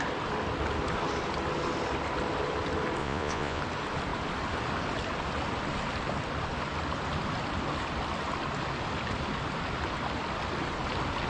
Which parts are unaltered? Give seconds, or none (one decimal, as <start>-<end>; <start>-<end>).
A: 0.0-3.0; 3.6-11.3